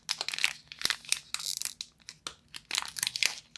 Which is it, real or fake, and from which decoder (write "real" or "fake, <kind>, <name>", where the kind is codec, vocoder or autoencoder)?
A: real